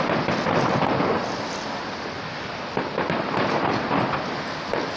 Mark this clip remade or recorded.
recorded